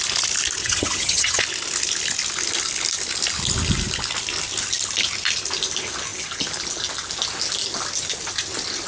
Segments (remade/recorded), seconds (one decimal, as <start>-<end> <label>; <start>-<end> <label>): 0.0-0.6 recorded; 0.6-1.4 remade; 1.4-8.9 recorded

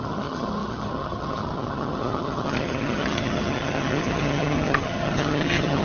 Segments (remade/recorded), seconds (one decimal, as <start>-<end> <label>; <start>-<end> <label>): 0.0-5.8 remade

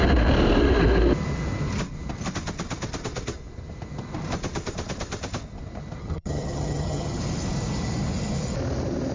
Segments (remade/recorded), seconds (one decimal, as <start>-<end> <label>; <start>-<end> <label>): 0.0-6.0 recorded; 6.0-7.2 remade; 7.2-9.1 recorded

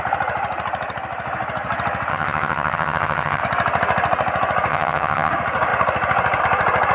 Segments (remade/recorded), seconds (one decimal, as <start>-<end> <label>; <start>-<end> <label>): 0.0-2.1 recorded; 2.1-3.4 remade; 3.4-4.7 recorded; 4.7-5.3 remade; 5.3-6.9 recorded

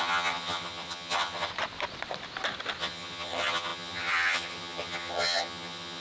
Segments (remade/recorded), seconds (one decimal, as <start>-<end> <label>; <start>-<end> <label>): 0.0-1.5 remade; 1.5-2.8 recorded; 2.8-6.0 remade

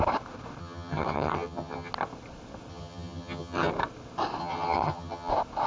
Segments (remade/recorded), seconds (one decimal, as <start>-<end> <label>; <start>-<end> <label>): 0.0-0.6 recorded; 0.6-1.9 remade; 1.9-2.7 recorded; 2.7-3.7 remade; 3.7-4.4 recorded; 4.4-5.3 remade; 5.3-5.7 recorded